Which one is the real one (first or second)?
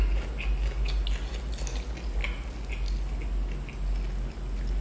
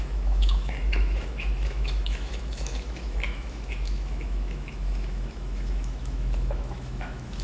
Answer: first